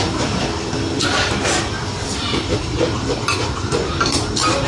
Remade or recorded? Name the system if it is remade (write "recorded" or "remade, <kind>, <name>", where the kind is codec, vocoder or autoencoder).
remade, vocoder, BigVGAN v2